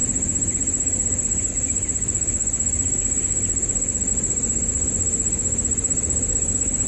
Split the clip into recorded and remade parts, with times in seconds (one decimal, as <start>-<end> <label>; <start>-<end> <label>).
0.0-4.1 recorded; 4.1-6.9 remade